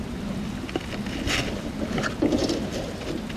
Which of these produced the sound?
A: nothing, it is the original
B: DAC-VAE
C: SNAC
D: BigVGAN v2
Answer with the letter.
A